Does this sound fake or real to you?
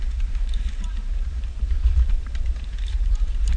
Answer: fake